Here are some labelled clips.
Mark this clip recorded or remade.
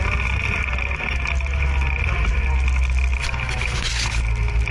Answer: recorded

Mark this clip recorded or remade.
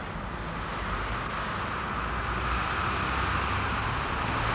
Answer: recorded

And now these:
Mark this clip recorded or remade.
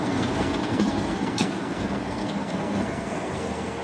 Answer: remade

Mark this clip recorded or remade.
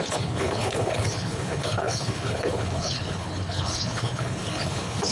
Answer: remade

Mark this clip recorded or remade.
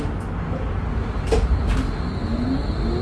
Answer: recorded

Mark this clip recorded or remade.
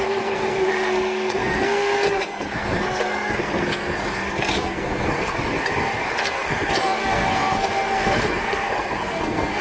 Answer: remade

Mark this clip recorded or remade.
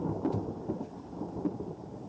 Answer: recorded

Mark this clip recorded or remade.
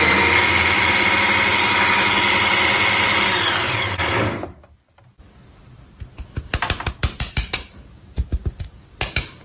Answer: recorded